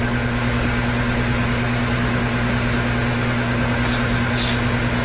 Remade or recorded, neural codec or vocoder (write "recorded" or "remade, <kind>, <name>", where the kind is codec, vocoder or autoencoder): recorded